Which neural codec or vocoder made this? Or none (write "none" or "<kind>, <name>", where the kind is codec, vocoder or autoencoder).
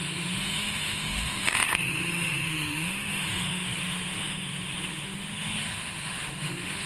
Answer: autoencoder, DAC-VAE